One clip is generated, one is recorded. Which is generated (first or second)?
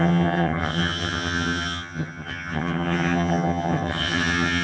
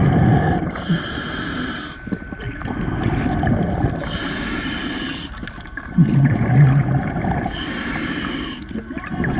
first